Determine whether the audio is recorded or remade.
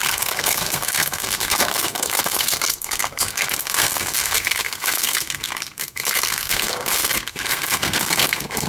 remade